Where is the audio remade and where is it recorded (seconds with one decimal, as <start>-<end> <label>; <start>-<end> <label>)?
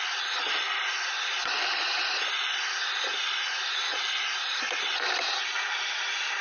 0.0-6.4 recorded